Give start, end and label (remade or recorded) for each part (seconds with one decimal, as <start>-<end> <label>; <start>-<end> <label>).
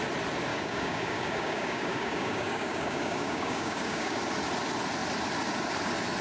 0.0-0.5 recorded; 0.5-4.2 remade; 4.2-6.2 recorded